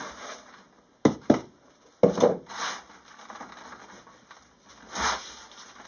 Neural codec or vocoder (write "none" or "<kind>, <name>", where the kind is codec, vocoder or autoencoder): none